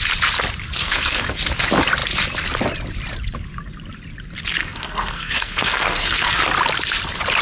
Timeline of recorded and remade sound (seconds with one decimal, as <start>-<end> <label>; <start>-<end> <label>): 0.0-0.8 recorded; 0.8-1.4 remade; 1.4-4.6 recorded; 4.6-6.4 remade; 6.4-7.4 recorded